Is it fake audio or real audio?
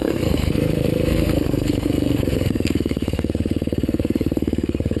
fake